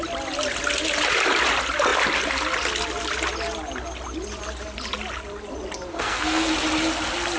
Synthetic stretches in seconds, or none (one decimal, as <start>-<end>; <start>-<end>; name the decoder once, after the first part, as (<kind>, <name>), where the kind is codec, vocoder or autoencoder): 5.9-6.5 (codec, SNAC)

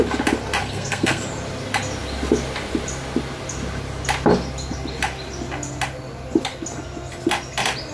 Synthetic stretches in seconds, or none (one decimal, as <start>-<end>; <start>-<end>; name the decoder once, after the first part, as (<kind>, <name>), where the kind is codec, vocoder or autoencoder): 0.6-1.2 (codec, SNAC)